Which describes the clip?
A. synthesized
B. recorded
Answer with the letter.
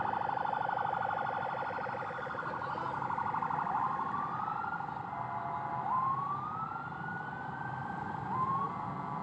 B